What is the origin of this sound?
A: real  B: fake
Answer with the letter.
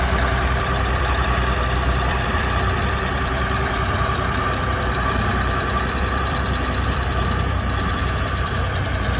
B